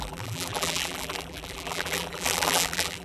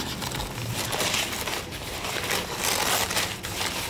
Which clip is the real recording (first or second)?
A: second